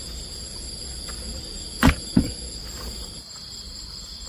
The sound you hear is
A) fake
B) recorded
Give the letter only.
B